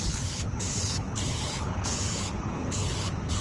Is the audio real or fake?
fake